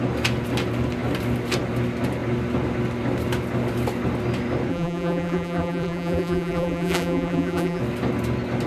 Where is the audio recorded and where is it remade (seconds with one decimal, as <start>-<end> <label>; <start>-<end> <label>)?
0.0-4.7 recorded; 4.7-7.8 remade; 7.8-8.7 recorded